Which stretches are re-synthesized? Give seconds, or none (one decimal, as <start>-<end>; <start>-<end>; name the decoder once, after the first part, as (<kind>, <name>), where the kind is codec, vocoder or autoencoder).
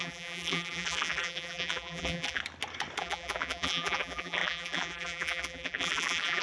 0.0-2.4 (vocoder, BigVGAN v2); 3.0-6.4